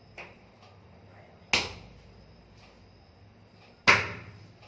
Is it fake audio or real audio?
real